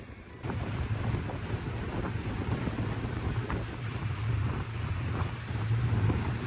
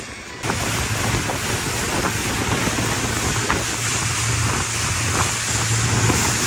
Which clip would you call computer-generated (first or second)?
first